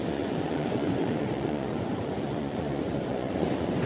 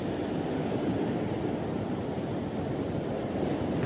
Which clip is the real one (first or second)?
second